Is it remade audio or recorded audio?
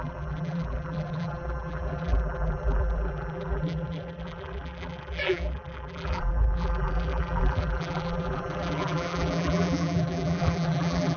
remade